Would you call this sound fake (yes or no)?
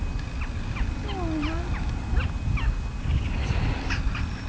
no